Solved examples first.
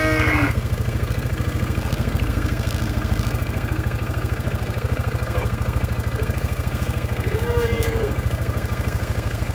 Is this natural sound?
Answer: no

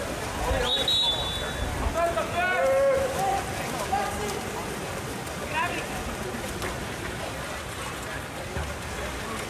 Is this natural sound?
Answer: yes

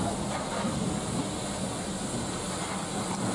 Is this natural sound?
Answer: yes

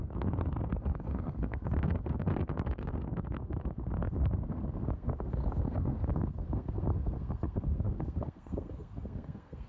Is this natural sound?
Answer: no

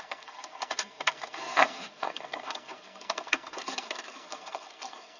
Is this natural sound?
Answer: no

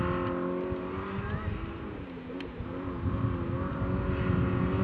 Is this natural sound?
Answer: yes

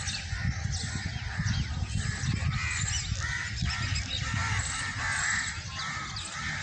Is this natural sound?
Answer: yes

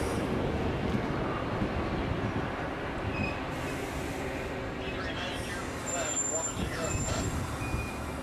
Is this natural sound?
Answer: yes